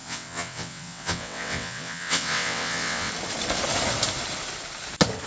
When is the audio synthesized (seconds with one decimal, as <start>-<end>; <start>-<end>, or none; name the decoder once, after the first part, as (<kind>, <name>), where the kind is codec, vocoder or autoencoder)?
0.0-3.1 (vocoder, WaveNeXt)